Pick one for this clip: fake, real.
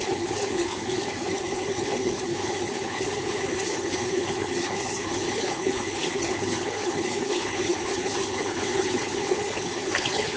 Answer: fake